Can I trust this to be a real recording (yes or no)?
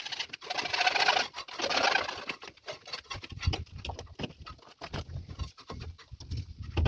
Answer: yes